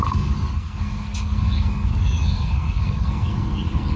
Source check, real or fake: fake